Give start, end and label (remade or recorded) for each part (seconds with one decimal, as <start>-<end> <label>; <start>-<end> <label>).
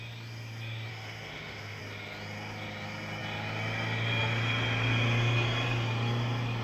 0.0-0.9 recorded; 0.9-1.8 remade; 1.8-6.6 recorded